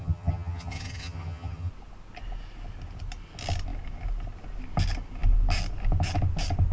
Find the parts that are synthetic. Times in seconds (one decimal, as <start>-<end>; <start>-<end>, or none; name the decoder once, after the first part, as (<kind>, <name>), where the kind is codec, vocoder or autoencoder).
0.0-1.7 (vocoder, HiFi-GAN)